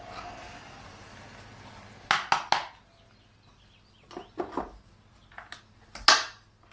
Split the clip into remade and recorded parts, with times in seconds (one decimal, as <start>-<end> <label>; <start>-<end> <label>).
0.0-6.7 recorded